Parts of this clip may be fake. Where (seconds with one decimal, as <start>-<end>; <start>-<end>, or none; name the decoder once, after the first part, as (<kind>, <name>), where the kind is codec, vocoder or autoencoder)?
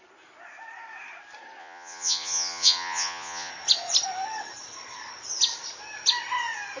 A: 1.6-3.5 (vocoder, Vocos)